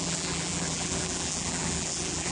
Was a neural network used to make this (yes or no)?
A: yes